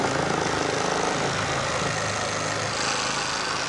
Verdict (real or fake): real